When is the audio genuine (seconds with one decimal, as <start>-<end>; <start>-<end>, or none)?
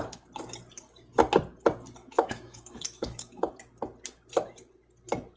0.0-2.0; 3.5-5.4